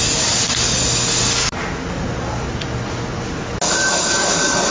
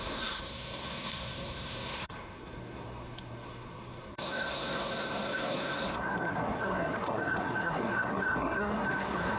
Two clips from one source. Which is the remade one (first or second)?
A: second